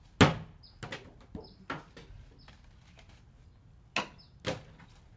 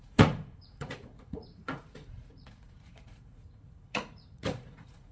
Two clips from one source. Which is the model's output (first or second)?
second